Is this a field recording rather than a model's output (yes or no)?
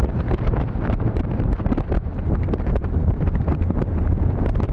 no